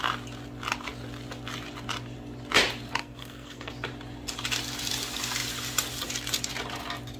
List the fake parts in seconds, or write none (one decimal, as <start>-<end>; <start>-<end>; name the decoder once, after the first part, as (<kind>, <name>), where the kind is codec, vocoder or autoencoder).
3.0-3.7 (codec, SNAC)